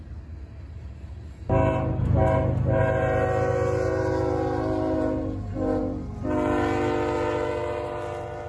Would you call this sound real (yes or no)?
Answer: yes